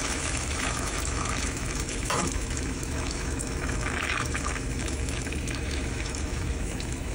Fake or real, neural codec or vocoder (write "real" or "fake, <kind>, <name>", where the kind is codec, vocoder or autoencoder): fake, autoencoder, DAC-VAE